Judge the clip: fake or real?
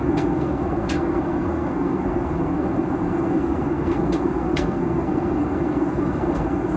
fake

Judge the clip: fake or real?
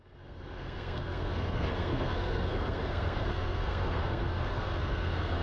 fake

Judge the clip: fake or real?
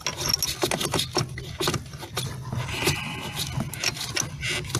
real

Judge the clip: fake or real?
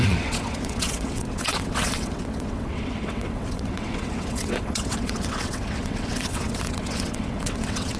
fake